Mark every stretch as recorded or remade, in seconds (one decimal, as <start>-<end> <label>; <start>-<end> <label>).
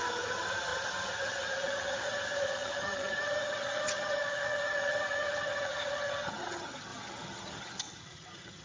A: 0.0-8.6 remade